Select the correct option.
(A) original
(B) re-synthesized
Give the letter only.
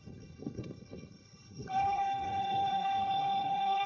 B